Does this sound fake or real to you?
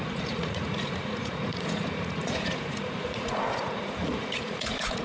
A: fake